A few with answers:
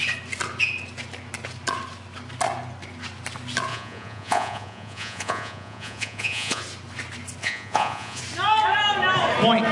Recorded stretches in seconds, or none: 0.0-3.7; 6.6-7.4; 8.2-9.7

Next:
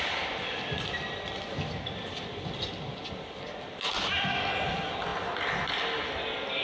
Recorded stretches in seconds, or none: 0.0-6.6

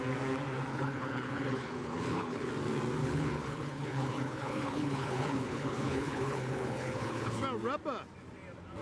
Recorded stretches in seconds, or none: 0.0-0.7; 2.5-3.0; 7.4-8.8

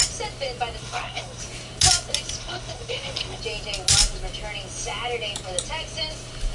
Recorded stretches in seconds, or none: 0.0-0.8; 1.4-2.4; 3.4-6.5

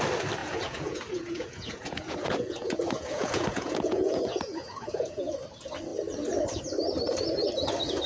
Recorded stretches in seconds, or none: 0.0-0.4; 5.3-8.1

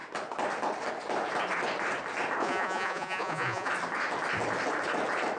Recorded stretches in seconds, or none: 0.0-2.4; 3.7-5.4

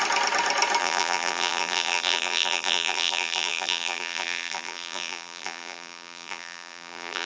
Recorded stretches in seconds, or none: 0.0-0.8

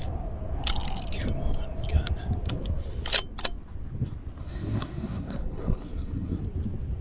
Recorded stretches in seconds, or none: 0.0-4.4; 6.4-7.0